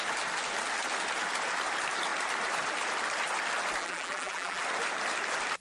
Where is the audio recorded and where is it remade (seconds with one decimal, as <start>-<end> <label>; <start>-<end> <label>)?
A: 0.0-3.8 recorded; 3.8-4.6 remade; 4.6-5.6 recorded